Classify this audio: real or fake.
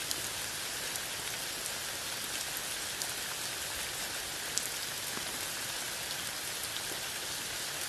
real